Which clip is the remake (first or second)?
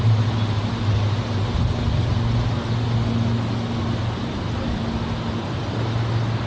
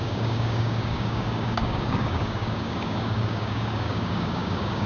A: second